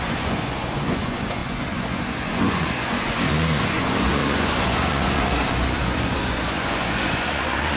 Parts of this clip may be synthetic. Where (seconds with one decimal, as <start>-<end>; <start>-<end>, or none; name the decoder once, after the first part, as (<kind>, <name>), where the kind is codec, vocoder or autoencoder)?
0.0-7.8 (vocoder, Vocos)